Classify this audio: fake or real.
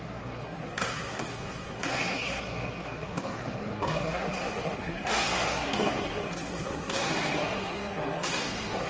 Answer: fake